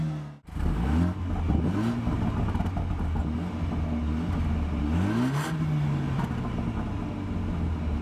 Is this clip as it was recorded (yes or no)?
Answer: yes